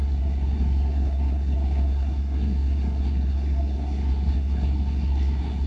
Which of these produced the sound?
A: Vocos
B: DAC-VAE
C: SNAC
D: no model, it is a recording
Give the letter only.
C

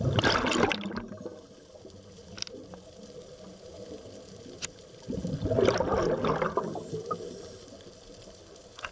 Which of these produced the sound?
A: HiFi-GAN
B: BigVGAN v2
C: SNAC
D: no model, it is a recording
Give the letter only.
D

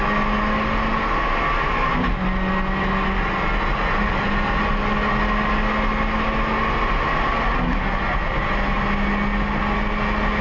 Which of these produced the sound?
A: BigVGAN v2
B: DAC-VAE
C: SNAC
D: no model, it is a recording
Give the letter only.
D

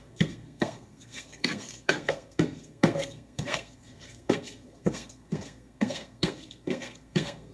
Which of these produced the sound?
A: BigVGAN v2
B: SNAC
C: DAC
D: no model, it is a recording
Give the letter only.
B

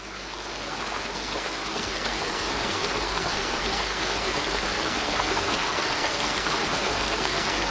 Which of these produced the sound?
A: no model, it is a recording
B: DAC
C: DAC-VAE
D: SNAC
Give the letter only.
D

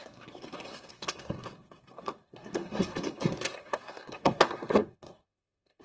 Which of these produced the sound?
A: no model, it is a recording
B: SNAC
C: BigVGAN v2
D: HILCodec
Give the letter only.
B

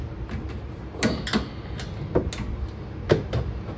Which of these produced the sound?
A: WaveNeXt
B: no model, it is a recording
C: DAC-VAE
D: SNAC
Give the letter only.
B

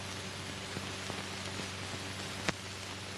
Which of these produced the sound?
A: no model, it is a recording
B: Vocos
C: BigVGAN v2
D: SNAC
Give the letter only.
A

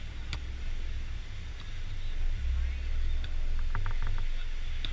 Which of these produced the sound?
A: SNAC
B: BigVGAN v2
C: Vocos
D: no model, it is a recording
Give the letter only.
D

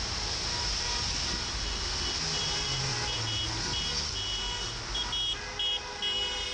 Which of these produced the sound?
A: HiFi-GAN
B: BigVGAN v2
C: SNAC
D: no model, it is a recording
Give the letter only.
D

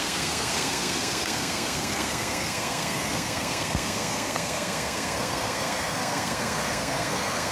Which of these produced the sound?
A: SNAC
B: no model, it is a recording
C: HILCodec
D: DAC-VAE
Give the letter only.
A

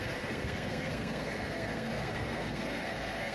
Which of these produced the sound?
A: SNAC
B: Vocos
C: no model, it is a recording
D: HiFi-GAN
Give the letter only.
A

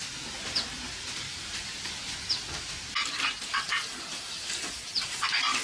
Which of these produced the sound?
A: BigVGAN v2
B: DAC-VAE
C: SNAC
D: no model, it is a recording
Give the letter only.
D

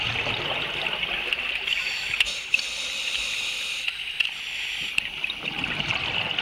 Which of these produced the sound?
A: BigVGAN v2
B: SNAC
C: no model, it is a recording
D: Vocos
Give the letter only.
C